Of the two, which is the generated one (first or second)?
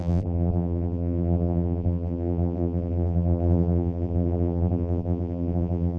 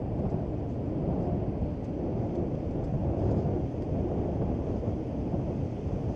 first